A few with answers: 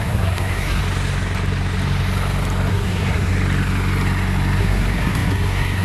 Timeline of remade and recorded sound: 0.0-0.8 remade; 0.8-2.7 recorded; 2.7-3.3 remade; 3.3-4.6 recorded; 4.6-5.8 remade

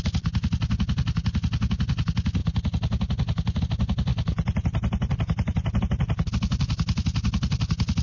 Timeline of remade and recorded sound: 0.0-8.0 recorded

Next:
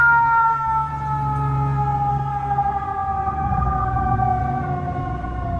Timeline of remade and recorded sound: 0.0-0.9 remade; 0.9-2.1 recorded; 2.1-5.6 remade